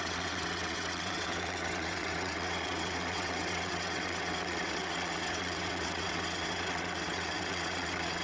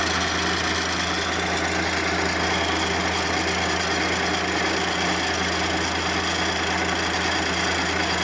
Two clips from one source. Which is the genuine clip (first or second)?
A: second